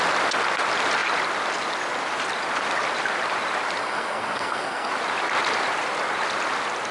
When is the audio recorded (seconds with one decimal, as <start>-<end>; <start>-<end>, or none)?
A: 0.0-3.8; 4.9-6.9